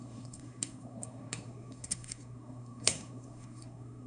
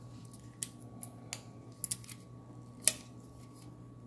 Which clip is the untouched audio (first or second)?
second